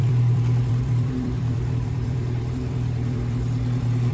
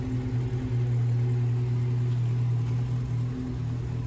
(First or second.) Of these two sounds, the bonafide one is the second